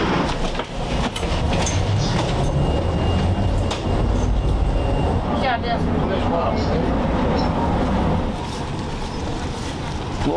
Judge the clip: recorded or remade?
recorded